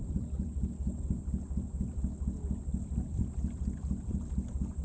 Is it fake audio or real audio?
real